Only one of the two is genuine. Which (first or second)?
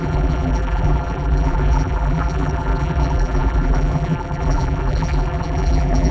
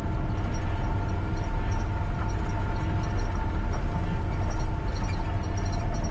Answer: second